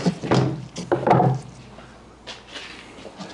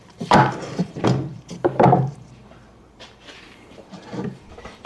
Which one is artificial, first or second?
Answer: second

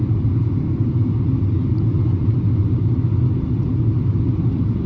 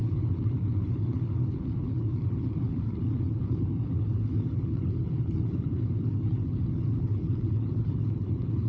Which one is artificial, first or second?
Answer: second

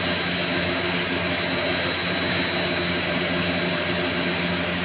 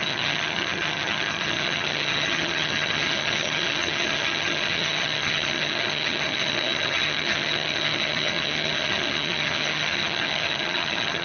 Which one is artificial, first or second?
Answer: second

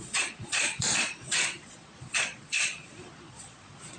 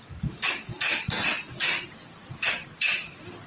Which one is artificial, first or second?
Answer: first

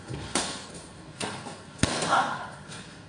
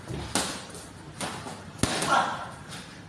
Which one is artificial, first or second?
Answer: first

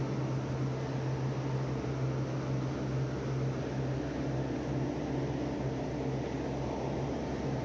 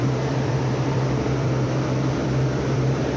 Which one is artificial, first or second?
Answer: second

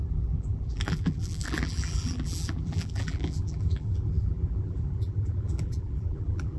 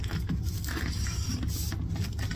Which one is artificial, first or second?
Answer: first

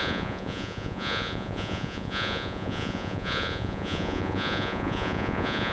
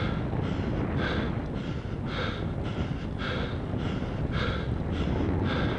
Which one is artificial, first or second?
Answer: first